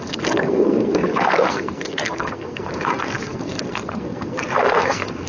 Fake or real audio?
fake